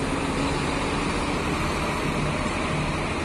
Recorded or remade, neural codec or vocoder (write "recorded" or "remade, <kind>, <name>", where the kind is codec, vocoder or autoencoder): recorded